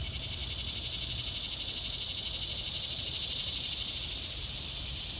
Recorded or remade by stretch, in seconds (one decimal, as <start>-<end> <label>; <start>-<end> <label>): 0.0-5.2 recorded

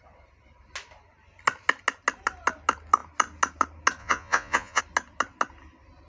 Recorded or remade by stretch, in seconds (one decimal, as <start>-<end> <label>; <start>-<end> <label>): 0.0-4.0 recorded; 4.0-4.8 remade; 4.8-6.1 recorded

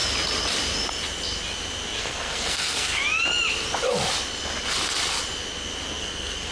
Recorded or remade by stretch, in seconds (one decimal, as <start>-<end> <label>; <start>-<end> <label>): 0.0-2.0 recorded; 2.0-3.0 remade; 3.0-6.0 recorded; 6.0-6.5 remade